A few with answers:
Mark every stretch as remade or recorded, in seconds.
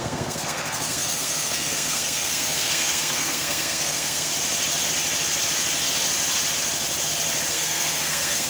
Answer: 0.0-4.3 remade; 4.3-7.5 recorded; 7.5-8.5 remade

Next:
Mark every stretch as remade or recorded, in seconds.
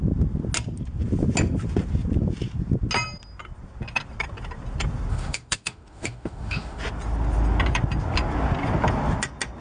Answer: 0.0-5.1 recorded; 5.1-6.8 remade; 6.8-9.6 recorded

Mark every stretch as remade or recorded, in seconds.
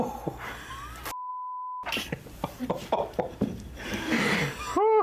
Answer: 0.0-1.3 recorded; 1.3-4.3 remade; 4.3-5.0 recorded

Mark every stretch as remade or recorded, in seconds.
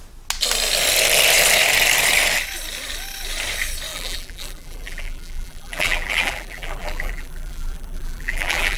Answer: 0.0-3.9 recorded; 3.9-8.8 remade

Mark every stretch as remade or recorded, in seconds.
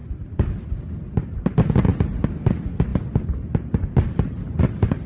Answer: 0.0-1.3 remade; 1.3-5.1 recorded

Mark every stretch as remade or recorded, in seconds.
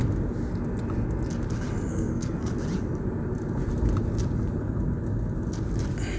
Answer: 0.0-1.9 recorded; 1.9-2.5 remade; 2.5-6.2 recorded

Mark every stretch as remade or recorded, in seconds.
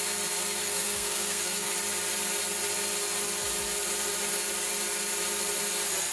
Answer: 0.0-0.6 recorded; 0.6-1.7 remade; 1.7-6.1 recorded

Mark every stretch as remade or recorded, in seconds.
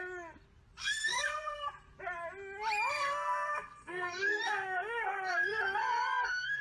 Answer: 0.0-0.8 recorded; 0.8-1.7 remade; 1.7-2.9 recorded; 2.9-6.6 remade